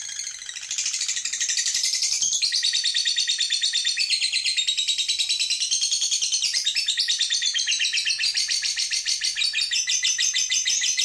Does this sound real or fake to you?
real